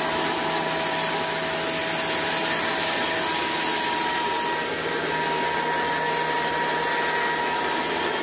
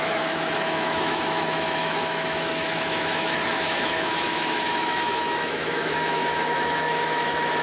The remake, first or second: second